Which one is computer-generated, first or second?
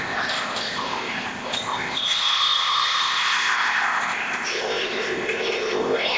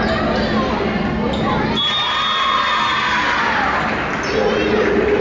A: first